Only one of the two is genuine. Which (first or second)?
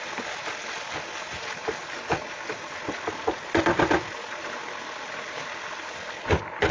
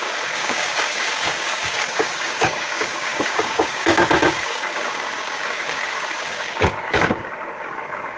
first